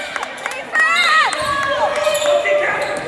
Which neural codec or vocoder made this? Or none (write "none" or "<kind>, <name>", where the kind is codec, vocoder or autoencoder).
vocoder, BigVGAN v2